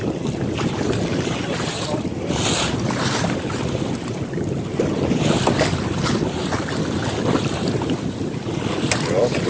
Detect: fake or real real